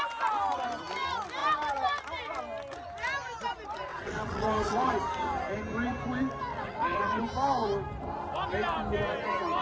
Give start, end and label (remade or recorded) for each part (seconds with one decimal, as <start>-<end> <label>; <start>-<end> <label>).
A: 0.0-3.9 recorded; 3.9-4.9 remade; 4.9-6.5 recorded; 6.5-7.2 remade; 7.2-9.6 recorded